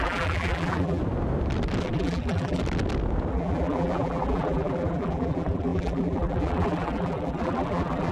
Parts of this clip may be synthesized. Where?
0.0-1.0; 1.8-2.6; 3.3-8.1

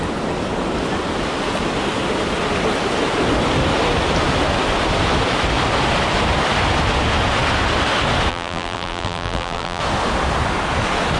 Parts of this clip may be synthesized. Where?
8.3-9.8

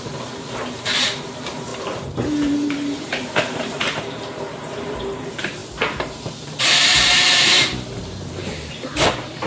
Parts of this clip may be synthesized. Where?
0.0-9.5

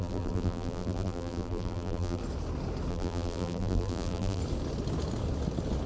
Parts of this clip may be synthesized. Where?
0.0-2.2; 2.9-4.4

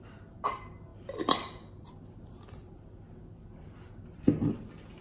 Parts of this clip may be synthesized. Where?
none

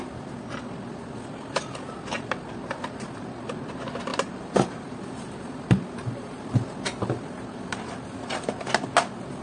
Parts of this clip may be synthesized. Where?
4.1-6.4

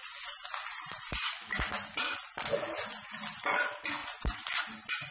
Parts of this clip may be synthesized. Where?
0.7-1.3; 4.0-4.6